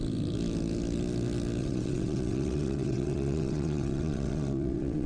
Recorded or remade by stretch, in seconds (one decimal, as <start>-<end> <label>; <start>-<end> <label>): 0.0-1.6 recorded; 1.6-5.1 remade